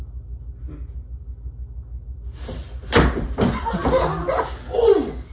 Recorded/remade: recorded